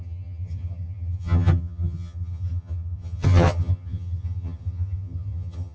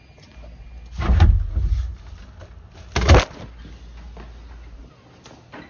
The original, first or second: second